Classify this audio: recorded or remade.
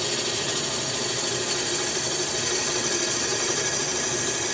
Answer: recorded